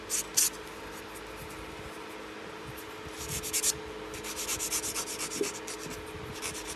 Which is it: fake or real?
real